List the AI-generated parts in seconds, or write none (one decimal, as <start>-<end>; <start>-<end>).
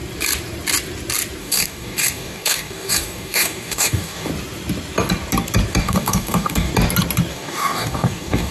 1.4-4.3; 5.8-6.7; 7.3-8.5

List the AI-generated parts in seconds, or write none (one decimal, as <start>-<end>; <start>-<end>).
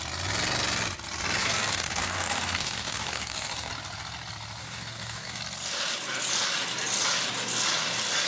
1.4-3.7; 4.6-5.4